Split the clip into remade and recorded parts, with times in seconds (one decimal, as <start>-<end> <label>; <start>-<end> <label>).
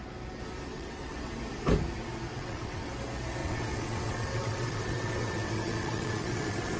0.0-0.7 recorded; 0.7-1.3 remade; 1.3-2.3 recorded; 2.3-2.9 remade; 2.9-3.4 recorded; 3.4-6.8 remade